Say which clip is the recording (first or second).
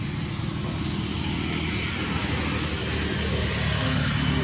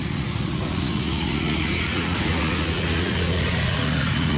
first